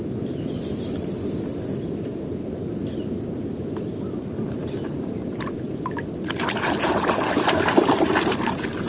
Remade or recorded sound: recorded